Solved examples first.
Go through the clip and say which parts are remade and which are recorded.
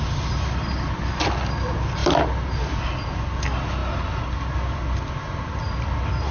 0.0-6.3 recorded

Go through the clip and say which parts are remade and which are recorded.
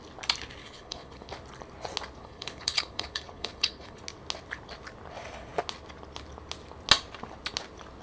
0.0-0.6 recorded; 0.6-1.3 remade; 1.3-2.2 recorded; 2.2-4.0 remade; 4.0-8.0 recorded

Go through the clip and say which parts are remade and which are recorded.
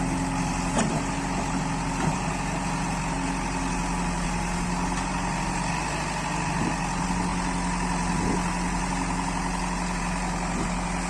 0.0-11.1 recorded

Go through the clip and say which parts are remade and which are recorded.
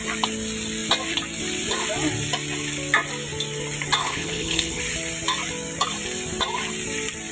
0.0-4.0 recorded; 4.0-4.8 remade; 4.8-7.3 recorded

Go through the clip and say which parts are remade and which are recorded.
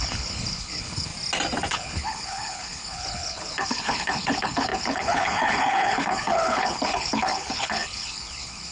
0.0-1.1 remade; 1.1-1.7 recorded; 1.7-8.7 remade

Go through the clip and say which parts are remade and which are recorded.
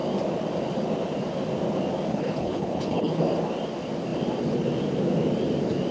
0.0-2.1 recorded; 2.1-3.2 remade; 3.2-5.9 recorded